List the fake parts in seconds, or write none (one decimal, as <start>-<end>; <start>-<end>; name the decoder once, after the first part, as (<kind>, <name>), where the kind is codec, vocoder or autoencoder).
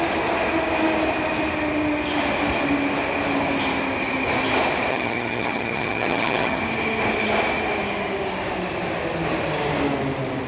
4.9-6.6 (vocoder, HiFi-GAN)